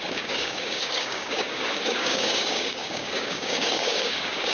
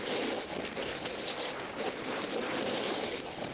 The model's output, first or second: first